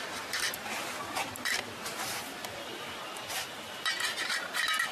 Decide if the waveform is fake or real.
real